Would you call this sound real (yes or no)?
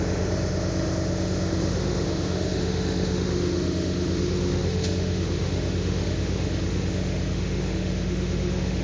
no